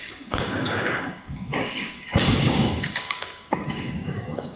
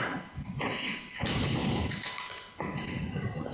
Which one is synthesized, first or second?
first